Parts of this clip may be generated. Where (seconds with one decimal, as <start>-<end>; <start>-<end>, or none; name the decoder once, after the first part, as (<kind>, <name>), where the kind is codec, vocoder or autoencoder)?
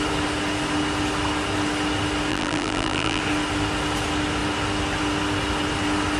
2.3-3.2 (vocoder, BigVGAN v2)